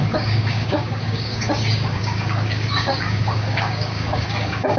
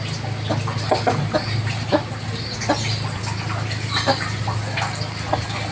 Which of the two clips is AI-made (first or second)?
first